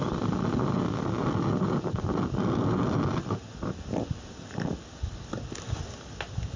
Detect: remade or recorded recorded